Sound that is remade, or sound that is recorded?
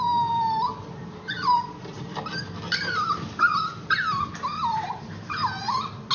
recorded